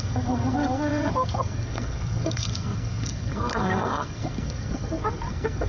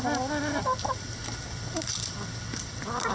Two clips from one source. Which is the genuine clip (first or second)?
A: second